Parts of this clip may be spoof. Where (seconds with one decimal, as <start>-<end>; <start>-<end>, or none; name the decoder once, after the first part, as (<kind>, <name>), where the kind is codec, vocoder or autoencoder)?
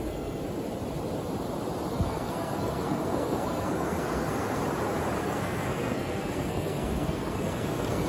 0.0-0.4 (codec, SNAC); 1.9-4.6; 5.2-8.1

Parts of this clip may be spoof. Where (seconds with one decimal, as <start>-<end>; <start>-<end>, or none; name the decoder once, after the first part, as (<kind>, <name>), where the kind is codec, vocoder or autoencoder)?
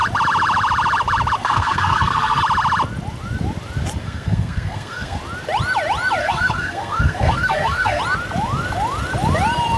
1.4-2.4 (codec, SNAC); 4.0-5.2; 6.2-8.0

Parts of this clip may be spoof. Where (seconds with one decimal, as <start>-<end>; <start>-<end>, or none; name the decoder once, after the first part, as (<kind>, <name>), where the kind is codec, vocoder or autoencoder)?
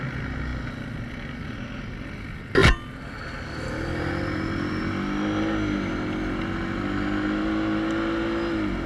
none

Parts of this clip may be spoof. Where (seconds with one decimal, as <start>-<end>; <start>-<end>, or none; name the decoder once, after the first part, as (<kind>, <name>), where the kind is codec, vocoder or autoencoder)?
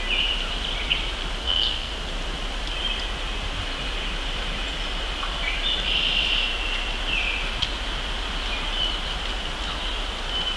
1.4-1.9 (codec, SNAC)